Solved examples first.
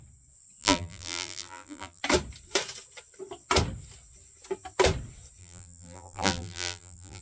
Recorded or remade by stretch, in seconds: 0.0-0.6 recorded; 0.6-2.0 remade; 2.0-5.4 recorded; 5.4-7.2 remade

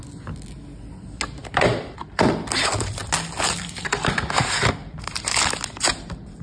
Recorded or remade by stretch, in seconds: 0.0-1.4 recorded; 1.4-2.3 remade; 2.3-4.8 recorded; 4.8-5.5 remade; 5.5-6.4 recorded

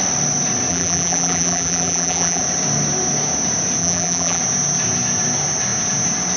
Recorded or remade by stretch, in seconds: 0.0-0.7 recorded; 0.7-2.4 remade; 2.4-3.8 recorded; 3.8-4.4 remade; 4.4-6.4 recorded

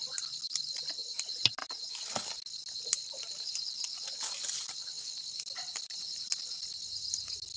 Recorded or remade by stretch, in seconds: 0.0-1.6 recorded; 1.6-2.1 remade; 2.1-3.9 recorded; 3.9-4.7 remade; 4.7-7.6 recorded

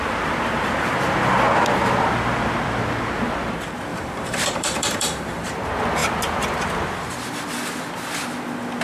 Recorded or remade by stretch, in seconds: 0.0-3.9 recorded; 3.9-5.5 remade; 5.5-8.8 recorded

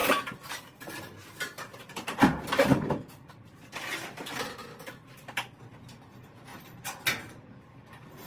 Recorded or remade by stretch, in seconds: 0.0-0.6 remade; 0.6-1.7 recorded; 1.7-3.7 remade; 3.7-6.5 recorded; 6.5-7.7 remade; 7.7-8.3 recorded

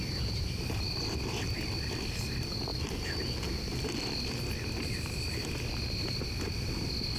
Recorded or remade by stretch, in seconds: 0.0-0.9 remade; 0.9-7.2 recorded